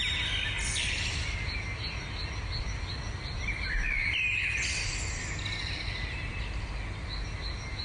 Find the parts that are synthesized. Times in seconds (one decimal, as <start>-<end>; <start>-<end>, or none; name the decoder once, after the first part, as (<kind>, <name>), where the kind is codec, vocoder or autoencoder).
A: none